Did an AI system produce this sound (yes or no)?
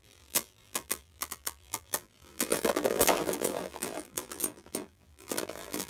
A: yes